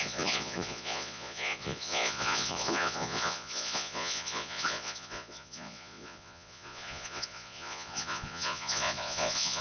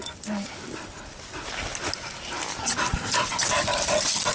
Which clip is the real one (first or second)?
second